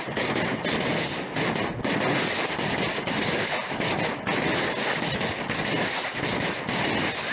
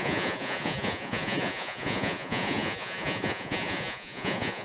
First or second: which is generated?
second